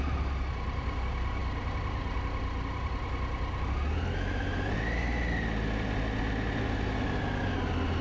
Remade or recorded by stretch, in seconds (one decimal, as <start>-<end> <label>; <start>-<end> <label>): 0.0-8.0 recorded